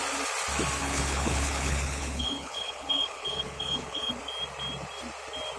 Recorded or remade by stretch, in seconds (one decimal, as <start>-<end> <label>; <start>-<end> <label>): 0.0-0.8 recorded; 0.8-4.2 remade; 4.2-5.6 recorded